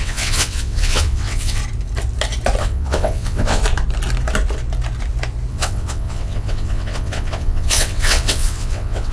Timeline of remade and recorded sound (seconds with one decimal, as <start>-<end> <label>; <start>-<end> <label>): 0.0-1.6 remade; 1.6-2.6 recorded; 2.6-3.6 remade; 3.6-5.5 recorded; 5.5-9.1 remade